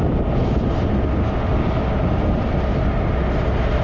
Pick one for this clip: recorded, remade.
recorded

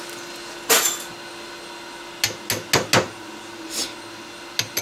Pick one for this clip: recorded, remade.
recorded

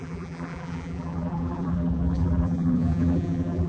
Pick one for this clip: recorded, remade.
remade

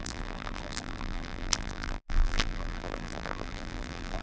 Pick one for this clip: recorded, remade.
remade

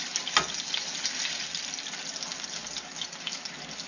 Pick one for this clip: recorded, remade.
recorded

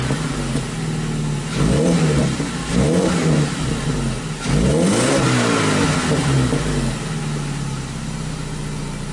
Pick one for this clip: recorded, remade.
recorded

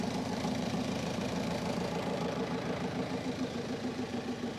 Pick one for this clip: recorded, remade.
remade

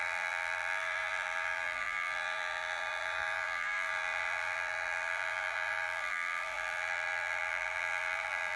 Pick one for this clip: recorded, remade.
remade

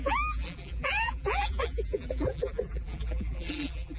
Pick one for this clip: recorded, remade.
remade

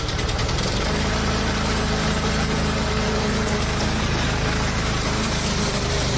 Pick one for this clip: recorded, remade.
remade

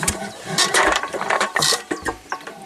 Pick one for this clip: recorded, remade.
remade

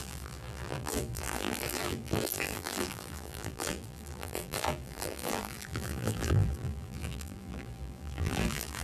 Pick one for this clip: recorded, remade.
remade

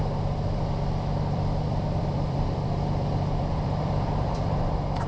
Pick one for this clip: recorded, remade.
remade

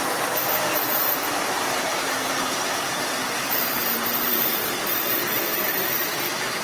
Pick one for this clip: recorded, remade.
remade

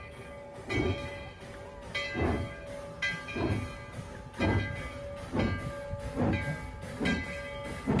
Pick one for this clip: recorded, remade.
recorded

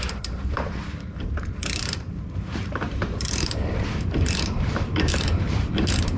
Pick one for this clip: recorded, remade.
remade